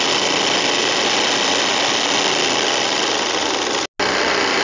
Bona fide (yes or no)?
yes